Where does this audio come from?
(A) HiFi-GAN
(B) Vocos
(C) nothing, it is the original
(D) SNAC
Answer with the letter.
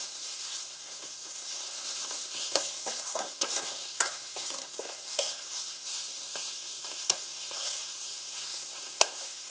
D